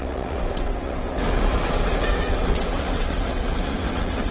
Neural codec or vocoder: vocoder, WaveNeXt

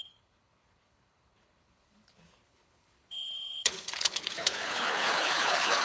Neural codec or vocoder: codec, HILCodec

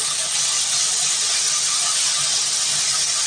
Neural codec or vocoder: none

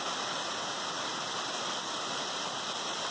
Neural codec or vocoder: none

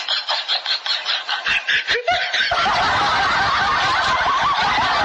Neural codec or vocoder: none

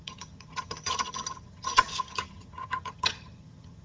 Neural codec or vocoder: vocoder, HiFi-GAN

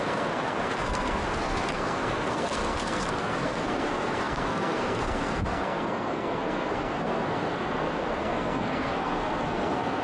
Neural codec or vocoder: codec, SNAC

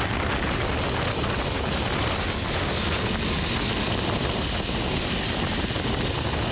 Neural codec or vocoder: none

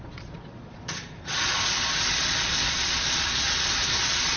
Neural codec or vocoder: vocoder, Vocos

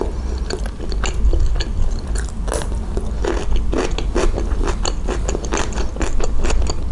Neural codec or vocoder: none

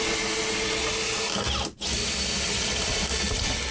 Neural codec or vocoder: none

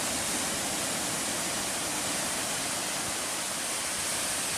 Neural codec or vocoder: none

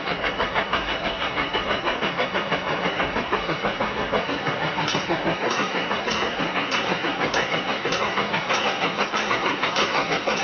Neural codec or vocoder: codec, SNAC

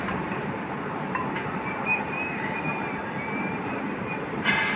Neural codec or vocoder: none